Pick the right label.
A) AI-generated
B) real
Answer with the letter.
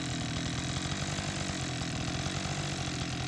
B